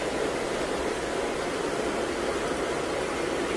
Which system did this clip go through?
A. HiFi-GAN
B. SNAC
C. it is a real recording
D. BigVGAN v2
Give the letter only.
C